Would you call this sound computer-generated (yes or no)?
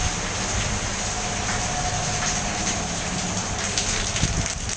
no